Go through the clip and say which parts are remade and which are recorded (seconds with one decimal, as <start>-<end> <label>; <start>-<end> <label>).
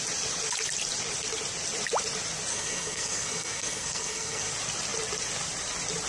0.0-2.5 recorded; 2.5-4.5 remade; 4.5-6.1 recorded